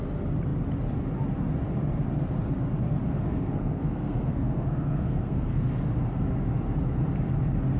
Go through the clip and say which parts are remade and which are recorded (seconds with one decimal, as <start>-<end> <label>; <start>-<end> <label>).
0.0-3.0 recorded; 3.0-5.9 remade; 5.9-7.8 recorded